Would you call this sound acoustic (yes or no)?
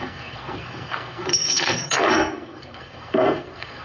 no